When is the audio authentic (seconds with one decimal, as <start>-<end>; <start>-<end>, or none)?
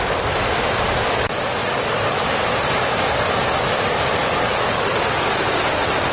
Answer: 0.0-1.6; 2.2-4.2; 4.9-6.1